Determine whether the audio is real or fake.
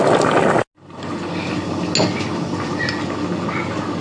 real